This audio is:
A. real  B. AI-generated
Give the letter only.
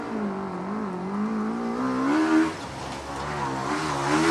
A